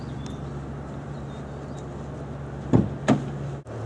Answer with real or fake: real